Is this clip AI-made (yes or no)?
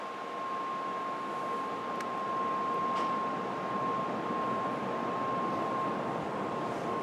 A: no